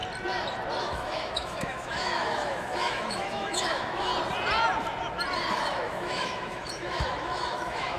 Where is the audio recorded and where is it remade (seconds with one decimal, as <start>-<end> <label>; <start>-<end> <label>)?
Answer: 0.0-0.8 recorded; 0.8-4.1 remade; 4.1-5.5 recorded; 5.5-8.0 remade